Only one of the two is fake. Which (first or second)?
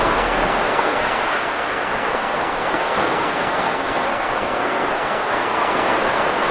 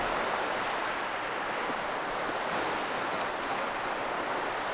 first